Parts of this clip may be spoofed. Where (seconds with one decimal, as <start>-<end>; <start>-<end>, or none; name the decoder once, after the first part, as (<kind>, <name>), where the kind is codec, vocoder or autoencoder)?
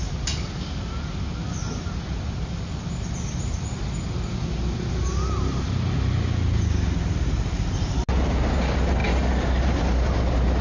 none